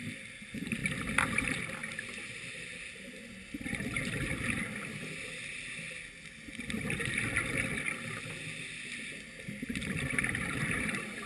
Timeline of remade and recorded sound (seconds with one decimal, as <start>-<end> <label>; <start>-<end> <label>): 0.0-11.3 recorded